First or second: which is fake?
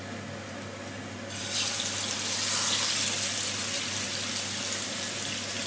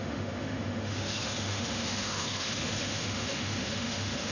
second